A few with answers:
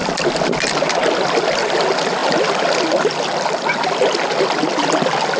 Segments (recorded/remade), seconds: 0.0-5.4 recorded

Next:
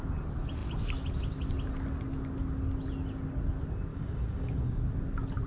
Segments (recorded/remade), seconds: 0.0-3.9 recorded; 3.9-4.8 remade; 4.8-5.5 recorded

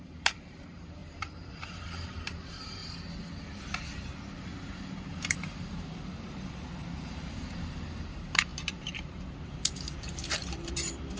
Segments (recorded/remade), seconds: 0.0-2.8 remade; 2.8-3.6 recorded; 3.6-11.2 remade

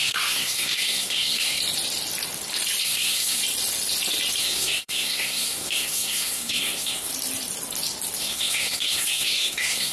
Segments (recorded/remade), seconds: 0.0-1.6 remade; 1.6-2.8 recorded; 2.8-3.4 remade; 3.4-4.4 recorded; 4.4-7.1 remade; 7.1-8.2 recorded; 8.2-9.9 remade